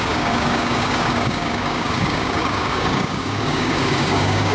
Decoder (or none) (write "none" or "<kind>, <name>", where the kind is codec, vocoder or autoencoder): codec, DAC